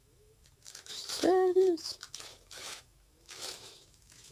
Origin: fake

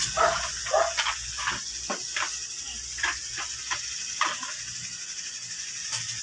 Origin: real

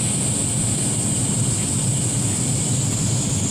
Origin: real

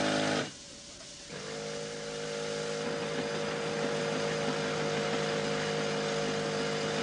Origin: real